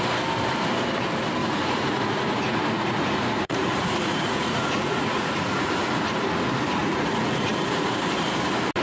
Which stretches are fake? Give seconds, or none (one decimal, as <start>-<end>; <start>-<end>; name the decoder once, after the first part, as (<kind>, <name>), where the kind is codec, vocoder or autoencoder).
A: 1.4-5.7 (vocoder, Vocos); 6.8-7.5